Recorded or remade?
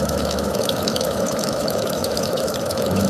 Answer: remade